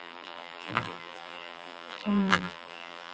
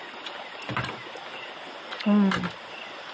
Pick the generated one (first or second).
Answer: first